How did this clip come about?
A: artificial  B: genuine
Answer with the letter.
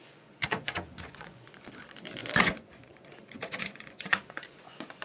A